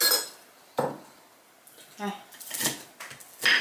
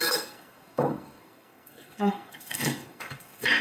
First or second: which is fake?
second